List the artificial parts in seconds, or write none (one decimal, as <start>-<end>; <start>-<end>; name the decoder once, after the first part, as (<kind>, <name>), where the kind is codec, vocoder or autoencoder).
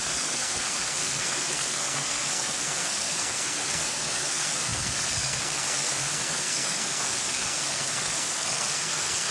0.0-9.3 (codec, SNAC)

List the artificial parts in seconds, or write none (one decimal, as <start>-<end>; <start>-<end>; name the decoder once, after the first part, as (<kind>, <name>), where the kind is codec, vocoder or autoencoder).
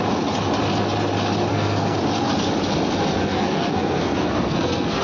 1.5-2.0 (codec, SNAC); 3.2-5.0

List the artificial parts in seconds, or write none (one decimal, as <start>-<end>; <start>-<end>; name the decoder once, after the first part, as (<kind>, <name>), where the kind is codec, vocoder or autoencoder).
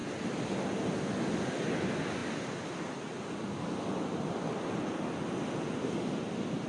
none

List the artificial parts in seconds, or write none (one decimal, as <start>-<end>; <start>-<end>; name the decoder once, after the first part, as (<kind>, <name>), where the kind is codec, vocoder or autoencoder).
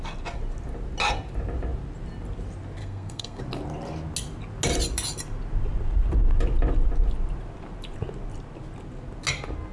2.8-3.4 (codec, SNAC)